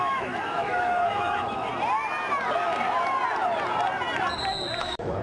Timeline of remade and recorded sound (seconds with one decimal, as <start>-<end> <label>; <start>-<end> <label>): 0.0-1.7 remade; 1.7-4.8 recorded; 4.8-5.2 remade

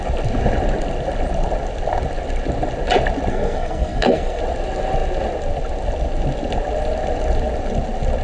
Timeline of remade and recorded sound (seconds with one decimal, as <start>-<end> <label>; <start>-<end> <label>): 0.0-3.3 recorded; 3.3-4.4 remade; 4.4-8.2 recorded

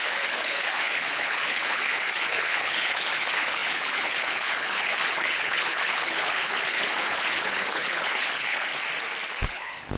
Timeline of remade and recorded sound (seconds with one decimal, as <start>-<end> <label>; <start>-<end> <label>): 0.0-8.7 remade; 8.7-9.4 recorded; 9.4-10.0 remade